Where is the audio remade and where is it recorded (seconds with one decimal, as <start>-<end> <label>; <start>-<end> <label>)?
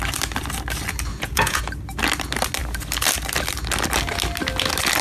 0.0-1.1 recorded; 1.1-1.6 remade; 1.6-5.0 recorded